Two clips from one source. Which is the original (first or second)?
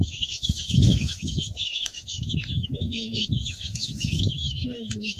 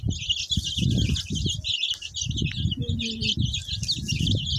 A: second